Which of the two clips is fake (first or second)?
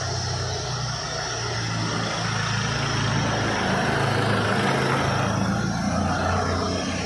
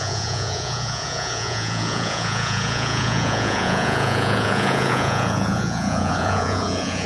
second